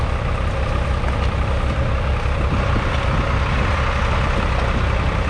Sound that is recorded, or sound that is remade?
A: recorded